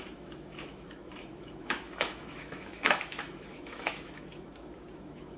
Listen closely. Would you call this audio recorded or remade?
remade